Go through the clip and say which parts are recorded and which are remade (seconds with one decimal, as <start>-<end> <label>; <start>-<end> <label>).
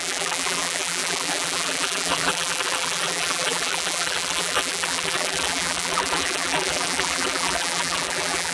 0.0-8.5 remade